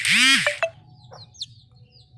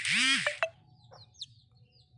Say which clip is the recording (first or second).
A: first